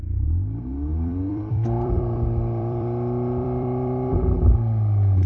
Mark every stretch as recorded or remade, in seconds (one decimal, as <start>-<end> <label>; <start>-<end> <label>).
0.0-0.9 recorded; 0.9-4.1 remade; 4.1-5.3 recorded